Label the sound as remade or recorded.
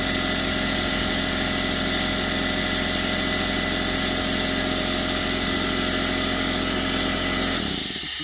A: recorded